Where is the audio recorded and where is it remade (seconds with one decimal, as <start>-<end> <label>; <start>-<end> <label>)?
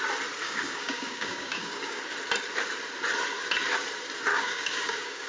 0.0-0.4 recorded; 0.4-2.0 remade; 2.0-4.3 recorded; 4.3-5.3 remade